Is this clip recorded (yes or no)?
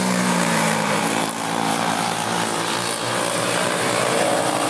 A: no